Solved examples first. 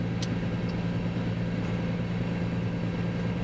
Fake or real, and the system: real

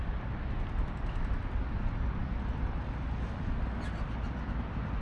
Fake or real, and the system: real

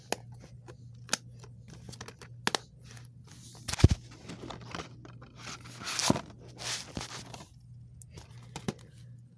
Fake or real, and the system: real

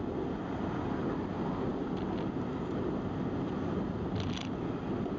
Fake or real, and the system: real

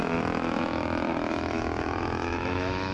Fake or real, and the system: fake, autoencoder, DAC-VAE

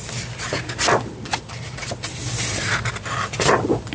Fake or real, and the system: real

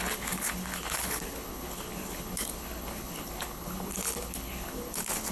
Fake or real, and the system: fake, codec, HILCodec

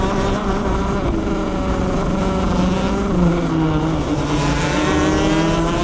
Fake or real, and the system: real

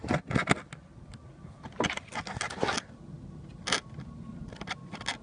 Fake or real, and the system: real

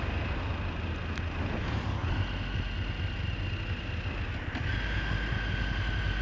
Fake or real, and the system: real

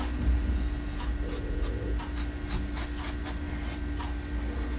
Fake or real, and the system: real